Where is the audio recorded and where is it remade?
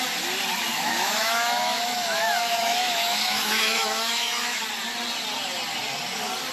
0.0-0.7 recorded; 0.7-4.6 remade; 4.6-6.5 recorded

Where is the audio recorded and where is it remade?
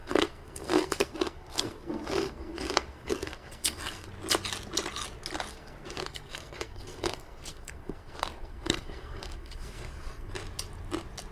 0.0-4.1 remade; 4.1-5.5 recorded; 5.5-10.3 remade; 10.3-11.3 recorded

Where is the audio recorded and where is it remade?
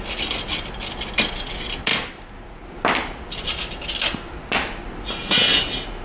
0.0-6.0 recorded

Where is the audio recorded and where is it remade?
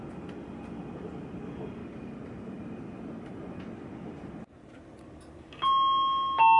0.0-1.8 recorded; 1.8-5.0 remade; 5.0-6.6 recorded